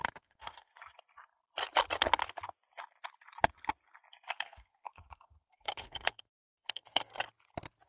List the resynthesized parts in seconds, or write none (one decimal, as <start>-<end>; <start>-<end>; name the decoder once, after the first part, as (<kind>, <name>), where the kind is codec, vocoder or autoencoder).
0.0-0.7 (codec, SNAC); 4.3-7.1